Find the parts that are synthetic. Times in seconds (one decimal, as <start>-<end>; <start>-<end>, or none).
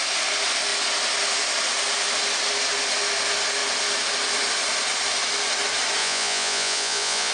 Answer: 6.0-7.3